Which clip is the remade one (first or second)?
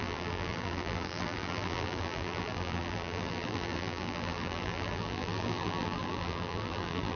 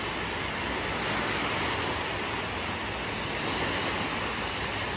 first